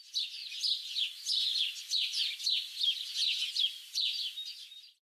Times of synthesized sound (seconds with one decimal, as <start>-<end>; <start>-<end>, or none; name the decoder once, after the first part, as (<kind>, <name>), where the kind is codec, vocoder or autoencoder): none